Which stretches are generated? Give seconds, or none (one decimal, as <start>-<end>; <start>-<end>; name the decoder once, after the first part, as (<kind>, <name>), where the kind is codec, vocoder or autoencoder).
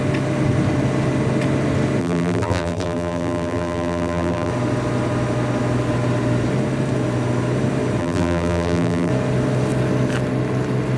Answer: 2.0-4.5 (vocoder, BigVGAN v2); 8.0-9.1